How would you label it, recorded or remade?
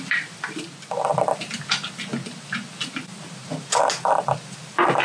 recorded